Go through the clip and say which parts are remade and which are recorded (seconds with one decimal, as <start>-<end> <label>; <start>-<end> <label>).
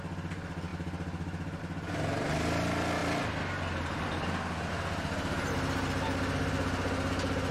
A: 0.0-7.5 recorded